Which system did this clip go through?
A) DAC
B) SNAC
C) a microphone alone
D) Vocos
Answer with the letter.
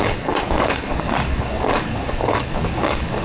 A